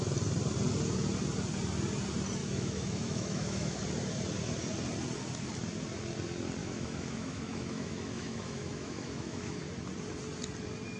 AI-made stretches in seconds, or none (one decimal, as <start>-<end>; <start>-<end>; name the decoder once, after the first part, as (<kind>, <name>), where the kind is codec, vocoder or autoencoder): 2.4-3.8 (autoencoder, DAC-VAE); 6.6-9.6